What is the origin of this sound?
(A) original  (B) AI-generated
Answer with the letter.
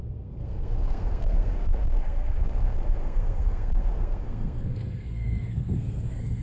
B